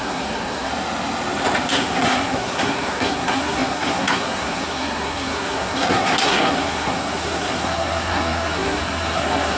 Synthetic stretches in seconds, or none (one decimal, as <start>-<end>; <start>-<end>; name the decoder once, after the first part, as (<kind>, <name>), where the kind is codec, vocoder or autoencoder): 0.0-0.7 (codec, SNAC); 1.7-9.6